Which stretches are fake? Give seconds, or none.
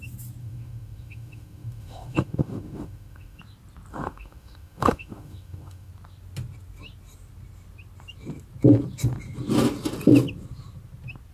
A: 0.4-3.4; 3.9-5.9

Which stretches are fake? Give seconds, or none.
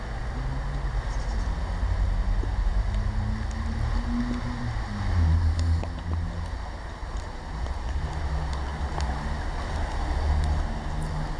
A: 7.0-8.1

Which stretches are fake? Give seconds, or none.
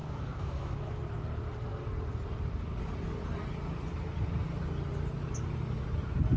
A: 0.0-1.0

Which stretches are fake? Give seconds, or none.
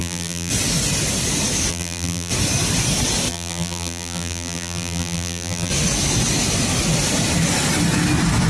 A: 0.0-0.5; 1.7-2.3; 3.3-5.7